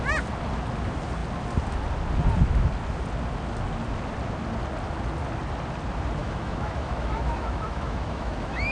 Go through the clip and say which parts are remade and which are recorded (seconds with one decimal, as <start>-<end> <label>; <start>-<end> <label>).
0.0-6.2 recorded; 6.2-8.7 remade